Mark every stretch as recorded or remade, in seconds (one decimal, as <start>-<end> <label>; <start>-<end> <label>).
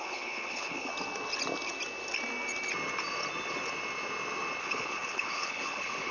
0.0-0.9 remade; 0.9-4.6 recorded; 4.6-6.1 remade